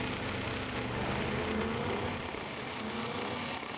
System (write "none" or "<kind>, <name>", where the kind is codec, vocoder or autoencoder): none